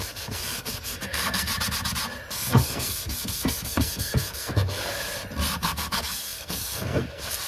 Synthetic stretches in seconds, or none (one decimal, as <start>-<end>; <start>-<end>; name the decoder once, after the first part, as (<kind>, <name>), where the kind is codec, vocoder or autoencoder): 0.0-1.5 (codec, SNAC); 2.3-4.8; 5.6-7.5